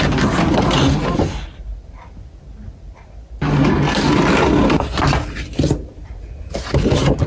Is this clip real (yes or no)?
yes